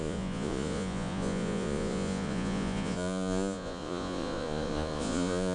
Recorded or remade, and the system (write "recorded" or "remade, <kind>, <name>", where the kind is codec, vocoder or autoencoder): remade, vocoder, Vocos